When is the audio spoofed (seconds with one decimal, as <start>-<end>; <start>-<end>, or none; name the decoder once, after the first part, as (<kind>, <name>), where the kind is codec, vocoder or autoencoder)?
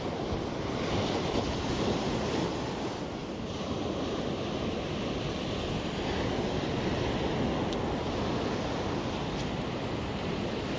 none